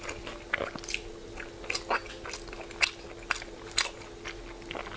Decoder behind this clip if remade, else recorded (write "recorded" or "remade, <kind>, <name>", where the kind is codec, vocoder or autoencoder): recorded